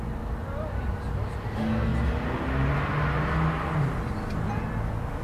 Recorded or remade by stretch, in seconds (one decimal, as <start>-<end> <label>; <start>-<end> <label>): 0.0-5.2 recorded